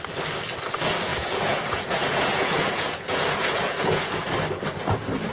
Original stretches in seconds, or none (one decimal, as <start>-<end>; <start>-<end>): 0.0-1.1; 4.3-5.3